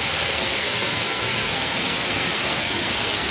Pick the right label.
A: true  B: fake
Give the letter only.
B